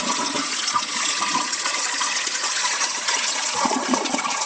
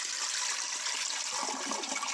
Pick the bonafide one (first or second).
second